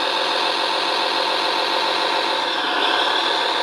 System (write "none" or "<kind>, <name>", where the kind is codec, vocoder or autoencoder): none